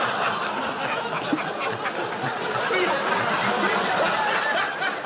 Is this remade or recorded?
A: recorded